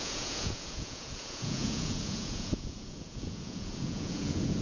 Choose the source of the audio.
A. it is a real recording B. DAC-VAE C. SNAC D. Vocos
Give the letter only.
D